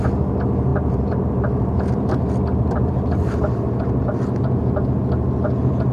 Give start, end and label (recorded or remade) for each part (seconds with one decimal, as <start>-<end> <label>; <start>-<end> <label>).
0.0-0.7 recorded; 0.7-4.0 remade; 4.0-5.9 recorded